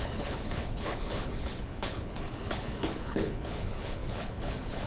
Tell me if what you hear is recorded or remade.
remade